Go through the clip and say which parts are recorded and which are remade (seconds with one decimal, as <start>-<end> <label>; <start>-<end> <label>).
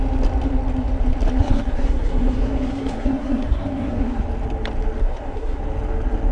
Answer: 0.0-1.4 recorded; 1.4-4.2 remade; 4.2-5.0 recorded; 5.0-5.6 remade; 5.6-6.3 recorded